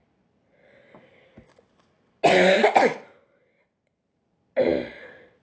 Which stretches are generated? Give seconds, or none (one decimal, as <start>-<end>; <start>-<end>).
none